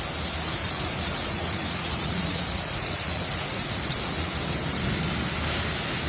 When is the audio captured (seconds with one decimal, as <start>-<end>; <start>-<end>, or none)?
0.0-0.6; 4.3-6.1